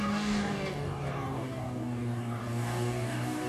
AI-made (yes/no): yes